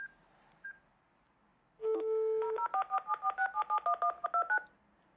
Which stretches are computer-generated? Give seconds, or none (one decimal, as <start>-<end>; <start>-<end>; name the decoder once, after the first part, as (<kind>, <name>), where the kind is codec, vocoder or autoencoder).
none